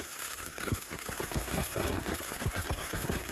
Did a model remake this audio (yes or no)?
yes